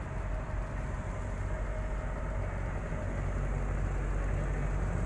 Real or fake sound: real